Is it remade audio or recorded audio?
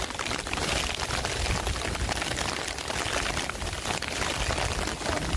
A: recorded